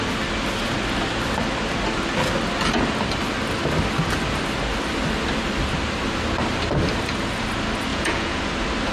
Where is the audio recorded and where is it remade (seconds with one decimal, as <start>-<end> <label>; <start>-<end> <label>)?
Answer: 0.0-7.9 recorded; 7.9-8.5 remade; 8.5-8.9 recorded